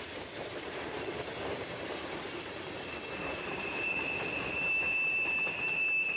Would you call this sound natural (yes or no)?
no